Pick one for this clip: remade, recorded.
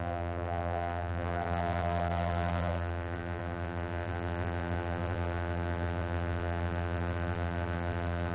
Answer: remade